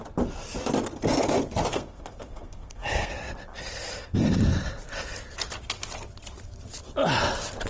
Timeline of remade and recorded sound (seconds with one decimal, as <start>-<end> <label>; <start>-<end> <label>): 0.0-1.7 recorded; 1.7-3.1 remade; 3.1-7.7 recorded